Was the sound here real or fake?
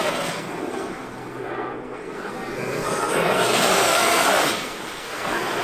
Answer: fake